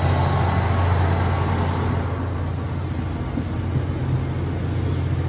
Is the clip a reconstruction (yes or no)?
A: no